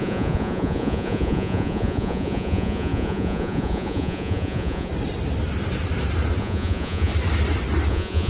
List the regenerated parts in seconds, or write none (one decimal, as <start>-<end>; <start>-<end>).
0.0-4.9; 6.4-7.1; 7.9-8.3